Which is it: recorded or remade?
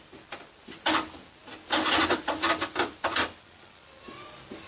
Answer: recorded